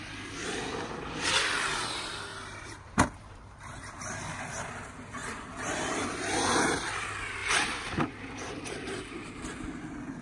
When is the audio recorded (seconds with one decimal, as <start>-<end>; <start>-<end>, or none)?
0.0-2.3; 4.2-5.2; 5.9-10.2

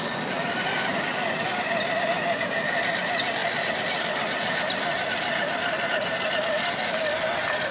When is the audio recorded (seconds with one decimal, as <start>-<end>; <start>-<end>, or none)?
0.0-7.7

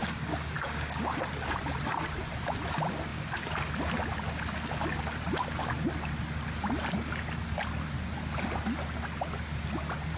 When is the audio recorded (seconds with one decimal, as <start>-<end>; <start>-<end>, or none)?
1.2-10.2

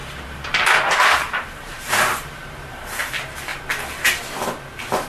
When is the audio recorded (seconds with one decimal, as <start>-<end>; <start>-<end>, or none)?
3.1-5.1

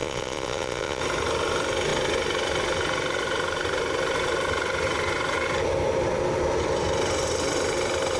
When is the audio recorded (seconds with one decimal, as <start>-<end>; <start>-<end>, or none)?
1.0-8.2

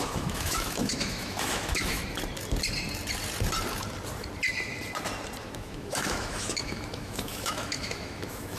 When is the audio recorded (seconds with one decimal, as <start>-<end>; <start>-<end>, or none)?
2.0-5.4

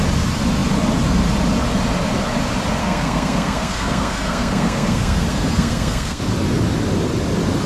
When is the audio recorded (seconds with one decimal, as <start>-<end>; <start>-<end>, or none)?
0.0-2.8; 6.2-7.7